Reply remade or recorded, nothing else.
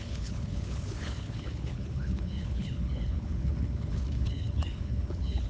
remade